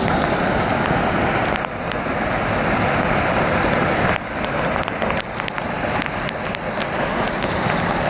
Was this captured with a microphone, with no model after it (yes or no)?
yes